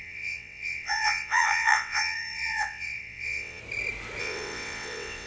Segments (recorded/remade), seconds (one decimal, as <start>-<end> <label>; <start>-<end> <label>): 0.0-3.6 remade; 3.6-4.2 recorded; 4.2-5.3 remade